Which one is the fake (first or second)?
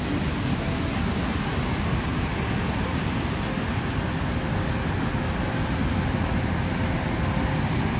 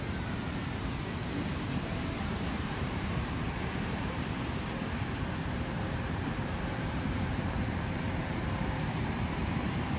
second